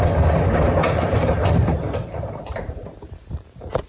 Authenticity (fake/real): fake